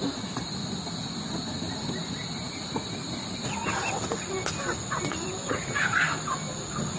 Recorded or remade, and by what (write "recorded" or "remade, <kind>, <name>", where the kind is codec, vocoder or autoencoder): recorded